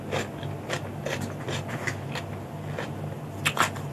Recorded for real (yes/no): yes